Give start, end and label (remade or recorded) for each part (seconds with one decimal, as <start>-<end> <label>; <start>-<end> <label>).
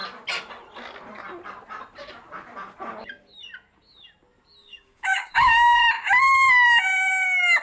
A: 0.0-4.6 recorded; 4.6-5.8 remade; 5.8-7.6 recorded